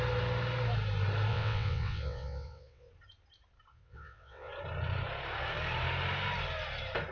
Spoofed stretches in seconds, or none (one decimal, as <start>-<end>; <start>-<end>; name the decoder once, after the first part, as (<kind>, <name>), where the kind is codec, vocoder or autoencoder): 1.3-2.9 (vocoder, WaveNeXt); 3.7-4.5